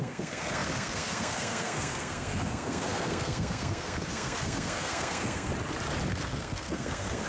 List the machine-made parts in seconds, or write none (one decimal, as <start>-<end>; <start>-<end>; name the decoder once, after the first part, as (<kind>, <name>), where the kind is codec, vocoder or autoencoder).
0.0-5.5 (codec, SNAC); 6.1-7.3